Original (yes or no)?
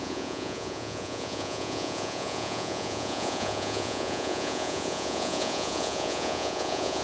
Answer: no